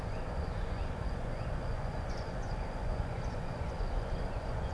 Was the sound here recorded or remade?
remade